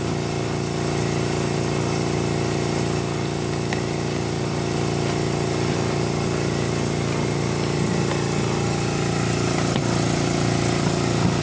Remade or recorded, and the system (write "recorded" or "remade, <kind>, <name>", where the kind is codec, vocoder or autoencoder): recorded